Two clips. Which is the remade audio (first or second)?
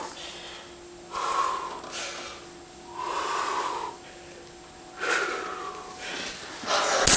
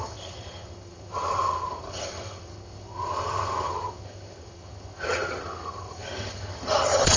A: second